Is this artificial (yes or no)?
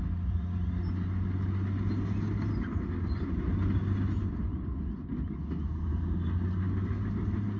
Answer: no